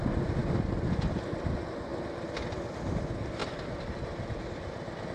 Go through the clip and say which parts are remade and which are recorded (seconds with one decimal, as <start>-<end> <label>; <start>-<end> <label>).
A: 0.0-5.1 recorded